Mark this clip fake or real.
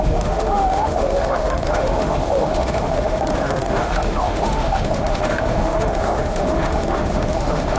fake